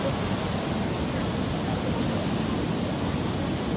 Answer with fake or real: real